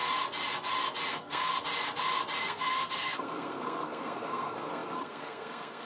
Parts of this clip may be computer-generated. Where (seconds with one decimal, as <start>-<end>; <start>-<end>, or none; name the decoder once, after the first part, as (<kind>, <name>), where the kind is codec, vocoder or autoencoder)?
1.1-1.5 (codec, SNAC); 2.4-5.9